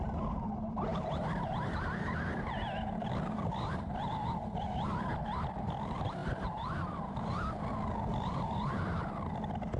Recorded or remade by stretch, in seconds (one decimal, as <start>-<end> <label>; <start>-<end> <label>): 0.0-9.8 remade